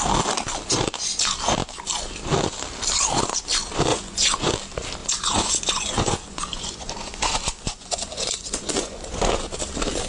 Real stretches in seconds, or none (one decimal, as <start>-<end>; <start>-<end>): 0.0-3.9; 4.5-5.0; 9.3-10.1